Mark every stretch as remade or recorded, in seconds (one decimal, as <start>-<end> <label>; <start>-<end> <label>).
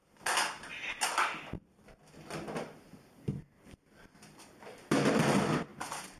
0.0-6.2 recorded